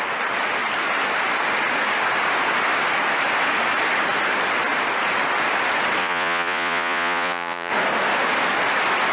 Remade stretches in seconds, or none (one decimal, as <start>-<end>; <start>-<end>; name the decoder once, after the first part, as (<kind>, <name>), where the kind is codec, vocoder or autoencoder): 6.0-7.7 (vocoder, Vocos)